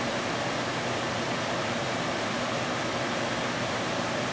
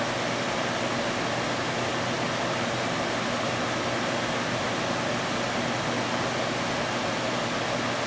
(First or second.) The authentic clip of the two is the second